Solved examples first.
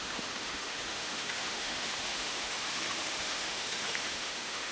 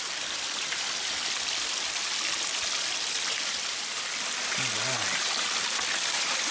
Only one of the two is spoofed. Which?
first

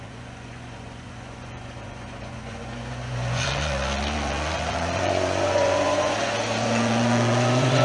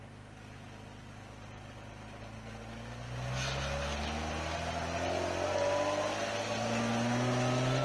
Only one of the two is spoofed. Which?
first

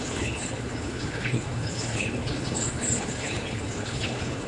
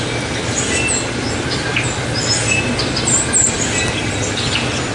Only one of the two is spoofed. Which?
first